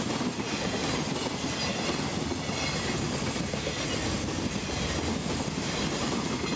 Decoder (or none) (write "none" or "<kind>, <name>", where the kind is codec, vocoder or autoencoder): none